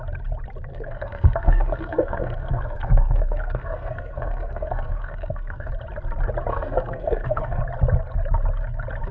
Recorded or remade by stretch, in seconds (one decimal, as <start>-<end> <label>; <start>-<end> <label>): 0.0-0.7 recorded; 0.7-5.7 remade; 5.7-6.5 recorded; 6.5-7.6 remade; 7.6-9.1 recorded